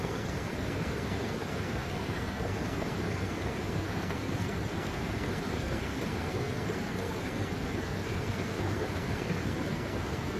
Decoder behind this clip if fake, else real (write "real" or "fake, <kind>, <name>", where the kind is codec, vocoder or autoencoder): fake, codec, SNAC